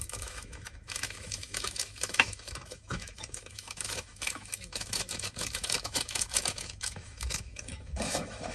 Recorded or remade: remade